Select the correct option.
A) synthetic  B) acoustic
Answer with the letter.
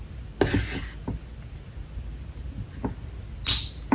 B